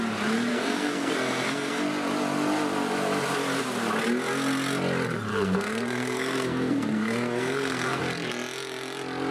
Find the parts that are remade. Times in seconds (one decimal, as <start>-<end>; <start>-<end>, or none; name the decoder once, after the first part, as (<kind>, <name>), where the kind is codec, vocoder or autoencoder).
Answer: 0.5-1.8 (codec, SNAC); 5.3-8.0